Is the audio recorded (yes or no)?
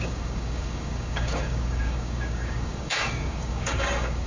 no